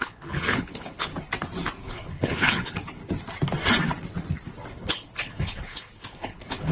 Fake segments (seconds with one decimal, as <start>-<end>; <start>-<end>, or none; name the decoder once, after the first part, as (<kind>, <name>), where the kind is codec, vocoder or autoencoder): 0.0-1.1 (codec, HILCodec); 1.8-3.0; 4.7-6.7